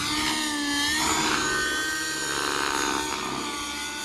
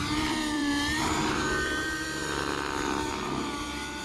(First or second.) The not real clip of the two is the second